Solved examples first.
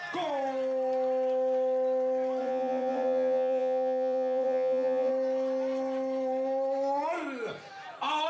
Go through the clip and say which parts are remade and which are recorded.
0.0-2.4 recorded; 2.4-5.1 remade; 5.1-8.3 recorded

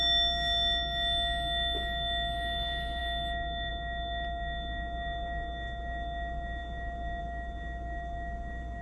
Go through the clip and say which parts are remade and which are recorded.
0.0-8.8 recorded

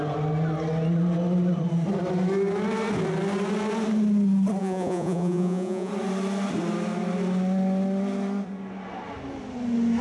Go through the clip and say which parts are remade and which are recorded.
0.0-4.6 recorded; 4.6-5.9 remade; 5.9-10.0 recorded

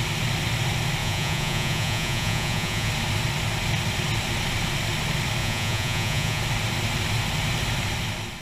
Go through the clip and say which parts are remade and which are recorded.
0.0-1.0 recorded; 1.0-2.9 remade; 2.9-5.4 recorded; 5.4-6.4 remade; 6.4-8.4 recorded